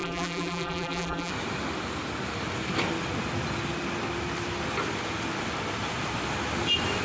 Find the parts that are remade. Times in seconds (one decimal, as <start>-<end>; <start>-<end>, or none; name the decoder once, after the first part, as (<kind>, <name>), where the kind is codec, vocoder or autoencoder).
0.0-1.3 (vocoder, BigVGAN v2)